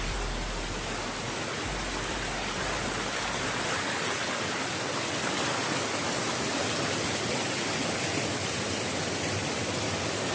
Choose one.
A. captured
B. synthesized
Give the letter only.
A